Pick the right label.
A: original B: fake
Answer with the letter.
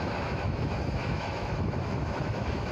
B